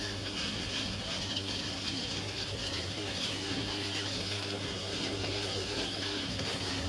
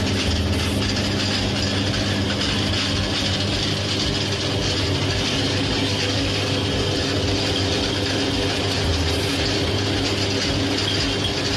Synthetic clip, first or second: first